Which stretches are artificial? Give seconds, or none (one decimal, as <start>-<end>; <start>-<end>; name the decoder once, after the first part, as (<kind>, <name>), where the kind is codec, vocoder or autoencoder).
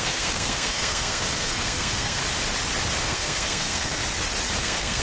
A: 0.0-2.2 (codec, SNAC); 3.0-4.0; 4.6-5.0